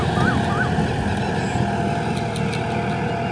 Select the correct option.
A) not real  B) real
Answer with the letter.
B